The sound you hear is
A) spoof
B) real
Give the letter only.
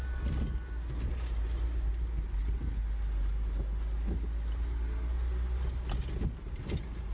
B